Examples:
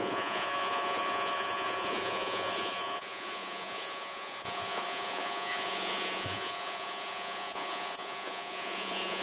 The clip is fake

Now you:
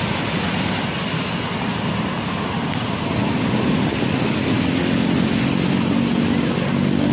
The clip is real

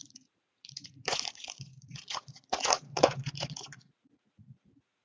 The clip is fake